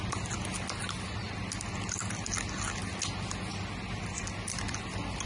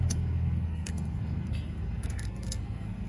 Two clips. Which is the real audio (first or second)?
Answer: first